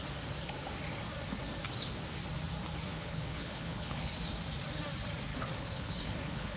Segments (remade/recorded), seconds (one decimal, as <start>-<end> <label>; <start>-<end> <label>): 0.0-2.9 recorded; 2.9-4.1 remade; 4.1-5.3 recorded; 5.3-6.6 remade